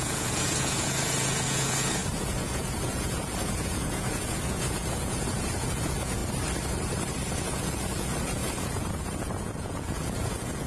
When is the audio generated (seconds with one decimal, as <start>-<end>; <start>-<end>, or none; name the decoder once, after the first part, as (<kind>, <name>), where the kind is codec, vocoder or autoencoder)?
0.0-6.2 (vocoder, Vocos); 7.4-10.7